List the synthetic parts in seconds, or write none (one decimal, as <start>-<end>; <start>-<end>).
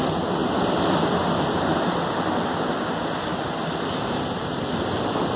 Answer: none